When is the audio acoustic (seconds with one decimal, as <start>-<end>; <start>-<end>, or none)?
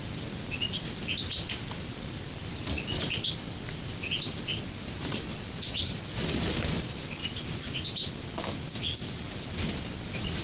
0.0-10.4